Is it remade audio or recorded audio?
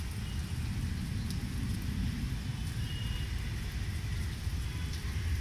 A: recorded